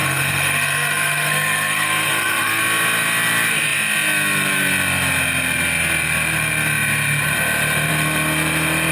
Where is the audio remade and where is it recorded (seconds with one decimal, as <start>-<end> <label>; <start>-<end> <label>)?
0.0-2.6 remade; 2.6-8.9 recorded